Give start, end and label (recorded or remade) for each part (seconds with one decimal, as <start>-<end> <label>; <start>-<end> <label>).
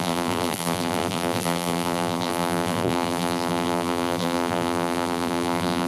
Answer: 0.0-5.9 remade